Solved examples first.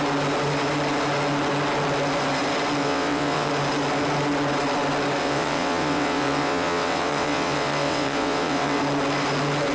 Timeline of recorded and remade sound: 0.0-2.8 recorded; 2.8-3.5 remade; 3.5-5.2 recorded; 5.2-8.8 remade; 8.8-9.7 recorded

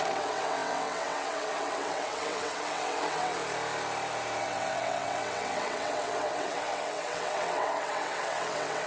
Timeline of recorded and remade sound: 0.0-3.4 remade; 3.4-4.4 recorded; 4.4-8.9 remade

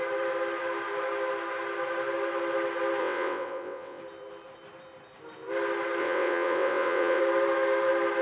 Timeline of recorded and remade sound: 0.0-3.0 recorded; 3.0-4.0 remade; 4.0-6.0 recorded; 6.0-7.2 remade; 7.2-8.2 recorded

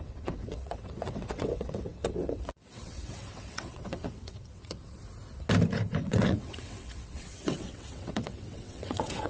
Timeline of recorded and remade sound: 0.0-5.0 remade; 5.0-6.0 recorded; 6.0-9.3 remade